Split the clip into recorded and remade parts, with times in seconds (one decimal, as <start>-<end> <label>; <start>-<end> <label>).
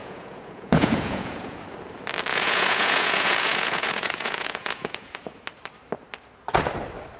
0.0-1.6 remade; 1.6-2.3 recorded; 2.3-5.4 remade; 5.4-7.2 recorded